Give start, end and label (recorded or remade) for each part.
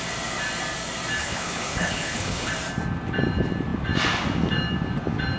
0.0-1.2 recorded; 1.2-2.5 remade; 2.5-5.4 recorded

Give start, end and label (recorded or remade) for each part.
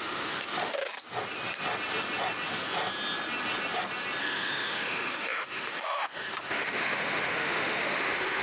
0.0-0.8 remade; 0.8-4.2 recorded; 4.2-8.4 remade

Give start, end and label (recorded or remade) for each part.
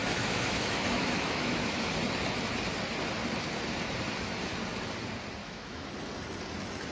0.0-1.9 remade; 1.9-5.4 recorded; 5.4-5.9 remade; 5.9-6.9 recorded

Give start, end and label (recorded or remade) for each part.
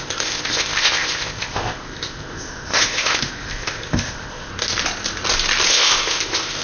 0.0-4.5 remade; 4.5-5.7 recorded; 5.7-6.6 remade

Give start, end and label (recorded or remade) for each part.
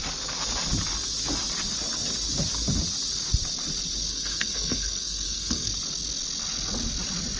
0.0-4.1 recorded; 4.1-5.7 remade; 5.7-7.4 recorded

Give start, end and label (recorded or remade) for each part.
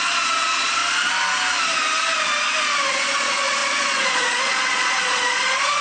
0.0-0.8 remade; 0.8-2.9 recorded; 2.9-5.8 remade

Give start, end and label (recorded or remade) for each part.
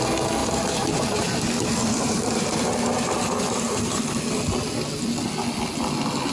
0.0-0.4 recorded; 0.4-4.0 remade; 4.0-6.3 recorded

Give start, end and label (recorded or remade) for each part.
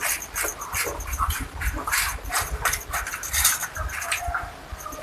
0.0-5.0 remade